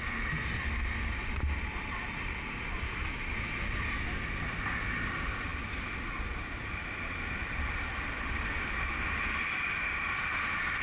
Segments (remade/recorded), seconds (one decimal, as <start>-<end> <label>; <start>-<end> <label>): 0.0-10.8 recorded